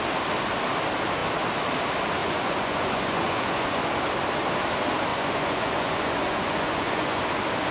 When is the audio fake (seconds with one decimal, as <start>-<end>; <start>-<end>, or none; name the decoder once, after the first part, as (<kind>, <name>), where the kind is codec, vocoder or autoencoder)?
2.2-3.8 (vocoder, Vocos); 5.1-7.2